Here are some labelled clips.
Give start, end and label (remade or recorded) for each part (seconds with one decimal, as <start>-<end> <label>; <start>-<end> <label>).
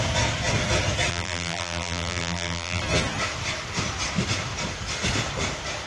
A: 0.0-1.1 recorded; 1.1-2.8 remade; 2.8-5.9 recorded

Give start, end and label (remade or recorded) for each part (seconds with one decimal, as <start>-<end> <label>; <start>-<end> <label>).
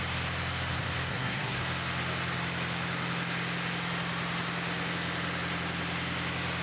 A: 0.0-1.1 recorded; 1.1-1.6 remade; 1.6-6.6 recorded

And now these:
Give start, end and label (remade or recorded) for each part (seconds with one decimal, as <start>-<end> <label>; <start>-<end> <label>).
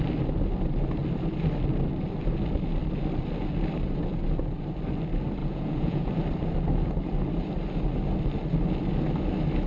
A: 0.0-5.4 recorded; 5.4-6.1 remade; 6.1-9.7 recorded